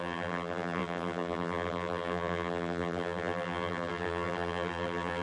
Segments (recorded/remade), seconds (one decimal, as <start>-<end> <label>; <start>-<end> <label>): 0.0-5.2 remade